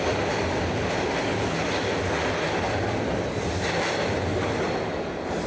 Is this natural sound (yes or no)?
yes